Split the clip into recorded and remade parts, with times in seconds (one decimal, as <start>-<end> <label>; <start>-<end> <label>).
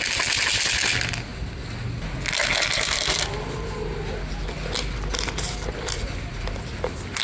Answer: 0.0-7.2 recorded